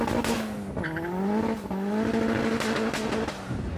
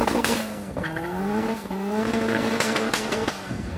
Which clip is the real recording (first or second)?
first